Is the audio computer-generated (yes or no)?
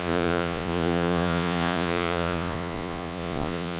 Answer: yes